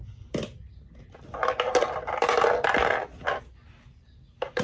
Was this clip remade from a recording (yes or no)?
no